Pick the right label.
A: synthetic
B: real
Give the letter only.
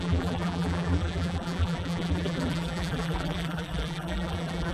A